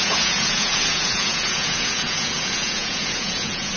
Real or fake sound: fake